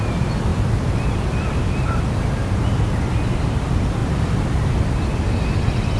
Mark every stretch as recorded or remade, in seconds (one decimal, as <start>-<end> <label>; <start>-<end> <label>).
0.0-4.0 recorded; 4.0-4.8 remade; 4.8-6.0 recorded